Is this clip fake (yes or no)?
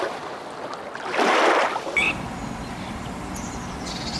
no